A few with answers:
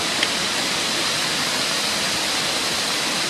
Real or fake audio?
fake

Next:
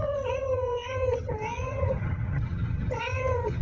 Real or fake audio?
fake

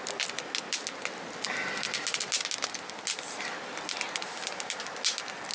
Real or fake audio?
real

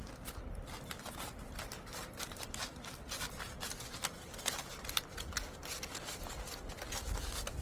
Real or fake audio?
real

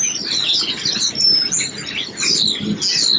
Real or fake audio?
real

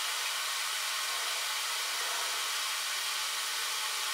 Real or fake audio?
real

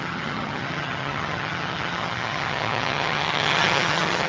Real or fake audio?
fake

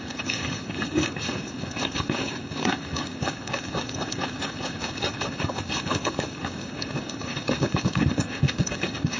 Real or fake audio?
fake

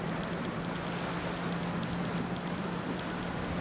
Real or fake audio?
real